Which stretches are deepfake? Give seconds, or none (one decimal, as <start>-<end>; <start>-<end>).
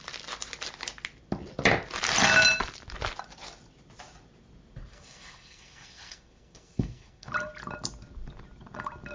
4.9-7.3